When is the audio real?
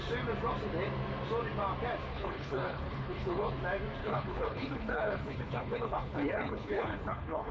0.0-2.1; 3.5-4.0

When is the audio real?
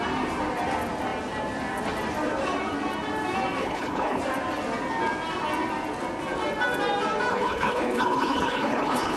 0.0-3.6; 4.2-7.3